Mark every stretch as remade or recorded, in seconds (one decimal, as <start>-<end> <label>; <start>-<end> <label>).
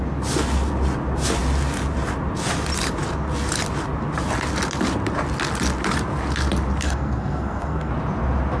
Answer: 0.0-6.8 recorded; 6.8-7.9 remade; 7.9-8.6 recorded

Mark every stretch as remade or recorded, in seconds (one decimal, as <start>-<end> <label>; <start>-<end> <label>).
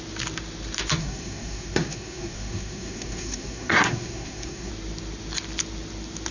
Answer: 0.0-1.0 recorded; 1.0-4.7 remade; 4.7-6.3 recorded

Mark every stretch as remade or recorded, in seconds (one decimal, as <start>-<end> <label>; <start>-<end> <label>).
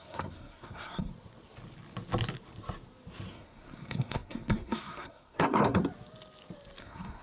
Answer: 0.0-1.1 remade; 1.1-3.3 recorded; 3.3-5.8 remade; 5.8-6.8 recorded; 6.8-7.2 remade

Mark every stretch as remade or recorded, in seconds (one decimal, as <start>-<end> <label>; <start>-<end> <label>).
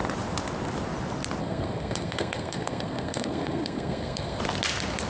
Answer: 0.0-1.4 recorded; 1.4-4.4 remade; 4.4-5.1 recorded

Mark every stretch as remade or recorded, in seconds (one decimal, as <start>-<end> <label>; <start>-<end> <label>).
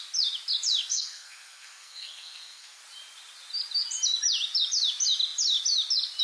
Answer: 0.0-0.9 recorded; 0.9-2.8 remade; 2.8-6.2 recorded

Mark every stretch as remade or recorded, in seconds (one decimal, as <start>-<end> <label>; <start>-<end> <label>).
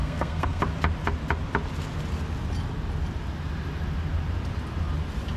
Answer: 0.0-0.6 remade; 0.6-5.4 recorded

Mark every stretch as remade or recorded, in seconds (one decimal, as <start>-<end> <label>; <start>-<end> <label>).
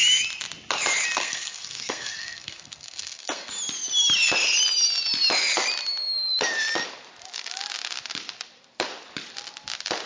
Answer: 0.0-1.2 recorded; 1.2-3.5 remade; 3.5-10.1 recorded